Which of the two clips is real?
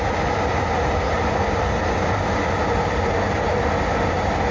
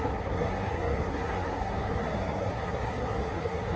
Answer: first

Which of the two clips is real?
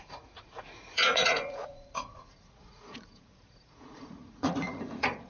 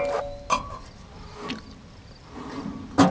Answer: second